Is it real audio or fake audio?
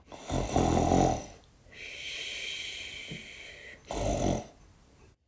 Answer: real